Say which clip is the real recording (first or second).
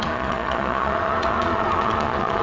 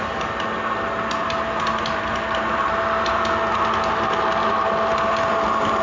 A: second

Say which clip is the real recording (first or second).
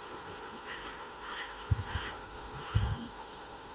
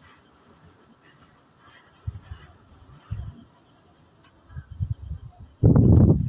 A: second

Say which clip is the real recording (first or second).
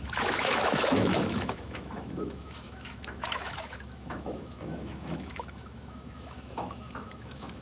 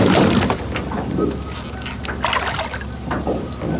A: second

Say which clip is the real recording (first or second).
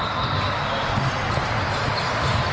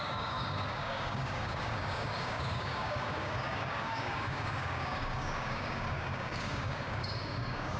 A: first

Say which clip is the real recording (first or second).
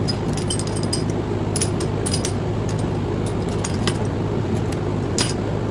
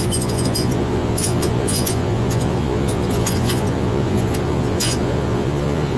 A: first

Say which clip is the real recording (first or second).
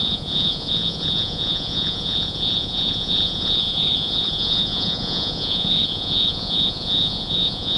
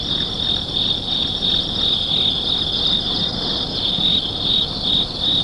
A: second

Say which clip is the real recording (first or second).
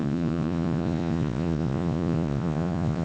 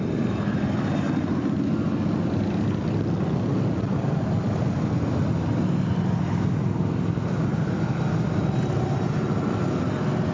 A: second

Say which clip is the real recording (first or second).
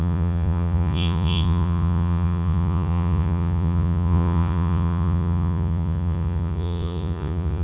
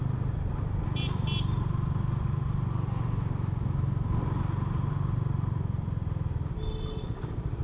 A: second